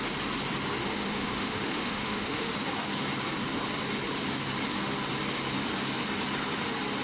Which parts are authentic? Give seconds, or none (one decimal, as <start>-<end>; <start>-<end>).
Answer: 0.0-0.8; 2.5-7.0

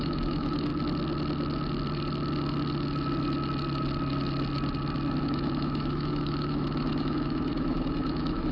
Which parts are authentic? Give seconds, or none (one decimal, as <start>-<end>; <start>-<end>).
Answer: 0.7-5.2

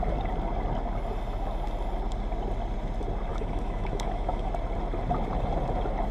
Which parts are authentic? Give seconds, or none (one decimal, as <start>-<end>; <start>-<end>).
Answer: 0.0-3.3; 4.5-6.1

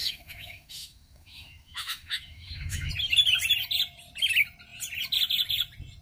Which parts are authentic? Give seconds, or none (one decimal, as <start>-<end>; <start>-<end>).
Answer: 2.9-6.0

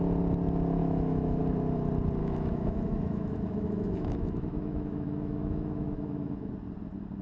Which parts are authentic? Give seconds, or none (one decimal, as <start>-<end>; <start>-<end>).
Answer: 0.0-0.8; 1.4-2.2; 6.5-7.2